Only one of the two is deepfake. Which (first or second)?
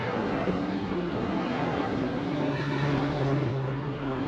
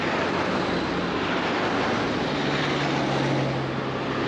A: first